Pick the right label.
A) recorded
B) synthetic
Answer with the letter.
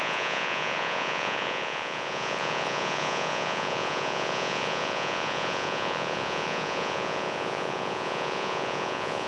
B